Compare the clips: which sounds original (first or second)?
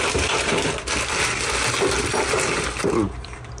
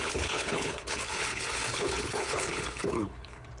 first